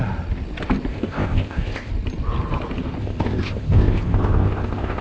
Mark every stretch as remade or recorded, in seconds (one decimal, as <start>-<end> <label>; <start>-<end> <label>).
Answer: 0.0-0.9 recorded; 0.9-1.9 remade; 1.9-3.0 recorded; 3.0-5.0 remade